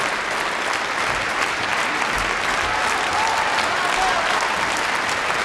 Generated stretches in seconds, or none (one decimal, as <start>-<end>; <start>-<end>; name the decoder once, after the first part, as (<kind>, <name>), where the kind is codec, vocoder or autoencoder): none